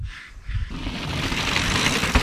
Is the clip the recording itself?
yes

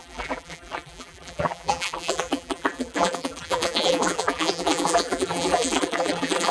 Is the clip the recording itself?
no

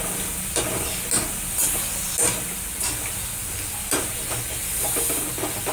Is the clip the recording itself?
yes